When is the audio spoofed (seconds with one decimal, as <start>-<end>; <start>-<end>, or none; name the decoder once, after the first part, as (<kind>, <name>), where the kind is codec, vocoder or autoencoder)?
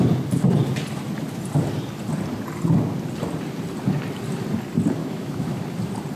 5.0-5.6 (autoencoder, DAC-VAE)